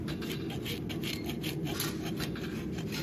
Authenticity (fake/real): real